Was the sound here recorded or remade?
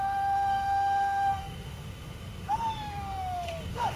remade